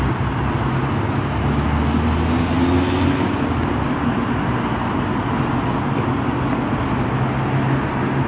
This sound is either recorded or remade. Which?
recorded